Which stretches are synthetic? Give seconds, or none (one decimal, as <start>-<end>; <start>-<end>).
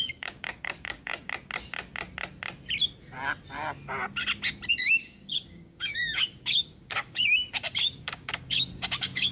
0.0-1.1; 4.7-9.3